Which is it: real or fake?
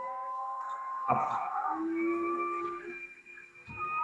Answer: fake